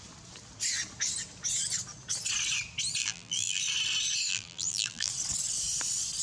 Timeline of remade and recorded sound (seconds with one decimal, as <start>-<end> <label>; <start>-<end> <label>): 0.0-3.0 recorded; 3.0-3.6 remade; 3.6-4.3 recorded; 4.3-5.1 remade; 5.1-6.2 recorded

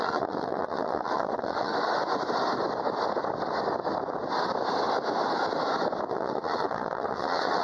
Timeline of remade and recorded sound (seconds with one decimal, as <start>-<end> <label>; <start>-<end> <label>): 0.0-1.7 remade; 1.7-6.1 recorded; 6.1-7.6 remade

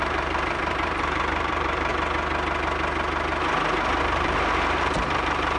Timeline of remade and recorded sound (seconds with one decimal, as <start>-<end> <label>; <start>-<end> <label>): 0.0-1.9 remade; 1.9-4.0 recorded; 4.0-5.6 remade